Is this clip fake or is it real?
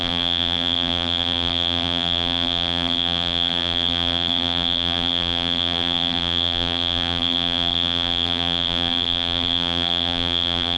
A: fake